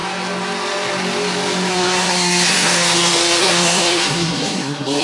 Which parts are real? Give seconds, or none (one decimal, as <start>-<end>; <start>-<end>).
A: 0.0-1.7